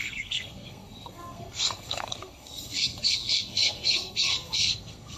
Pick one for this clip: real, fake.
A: fake